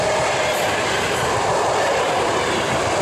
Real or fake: fake